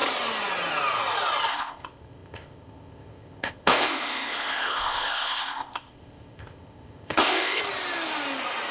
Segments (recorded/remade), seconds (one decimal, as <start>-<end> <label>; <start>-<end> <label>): 0.0-1.5 recorded; 1.5-7.6 remade; 7.6-8.7 recorded